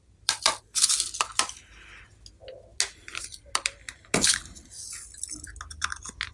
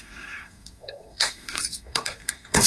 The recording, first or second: first